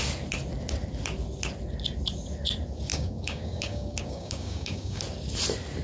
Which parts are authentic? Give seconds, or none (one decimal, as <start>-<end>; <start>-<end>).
0.0-2.9; 5.0-5.8